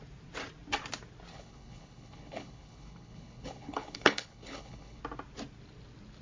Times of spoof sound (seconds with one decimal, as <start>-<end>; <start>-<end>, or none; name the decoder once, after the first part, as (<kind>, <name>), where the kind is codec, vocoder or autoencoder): 1.3-5.0 (codec, HILCodec)